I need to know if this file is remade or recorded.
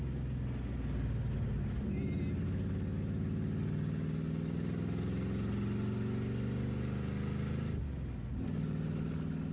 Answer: recorded